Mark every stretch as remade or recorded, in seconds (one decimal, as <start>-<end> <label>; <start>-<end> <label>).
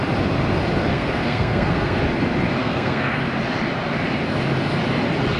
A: 0.0-0.9 recorded; 0.9-2.0 remade; 2.0-2.6 recorded; 2.6-3.2 remade; 3.2-5.4 recorded